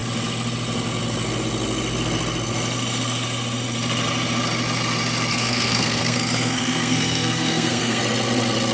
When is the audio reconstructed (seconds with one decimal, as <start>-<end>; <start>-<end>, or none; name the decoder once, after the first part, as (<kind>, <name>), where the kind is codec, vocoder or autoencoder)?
5.3-8.0 (codec, SNAC)

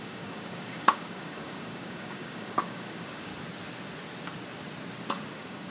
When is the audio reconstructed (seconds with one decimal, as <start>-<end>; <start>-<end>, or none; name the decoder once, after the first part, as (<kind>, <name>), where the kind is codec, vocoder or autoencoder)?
0.0-3.3 (codec, DAC); 5.3-5.7

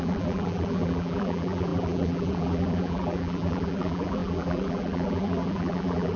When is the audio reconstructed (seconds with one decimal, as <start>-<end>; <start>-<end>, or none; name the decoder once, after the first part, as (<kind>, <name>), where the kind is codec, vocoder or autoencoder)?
0.0-6.2 (vocoder, BigVGAN v2)

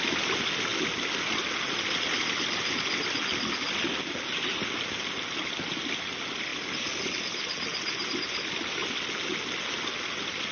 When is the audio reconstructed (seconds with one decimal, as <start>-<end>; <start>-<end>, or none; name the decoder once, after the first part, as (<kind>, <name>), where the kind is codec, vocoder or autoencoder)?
none